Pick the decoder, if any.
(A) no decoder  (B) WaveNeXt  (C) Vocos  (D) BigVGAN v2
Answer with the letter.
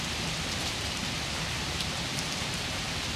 D